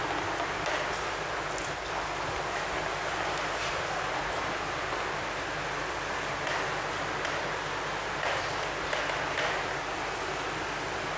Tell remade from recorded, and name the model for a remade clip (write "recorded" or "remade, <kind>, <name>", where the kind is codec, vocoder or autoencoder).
recorded